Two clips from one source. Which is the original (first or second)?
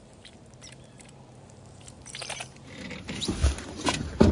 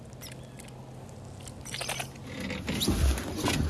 second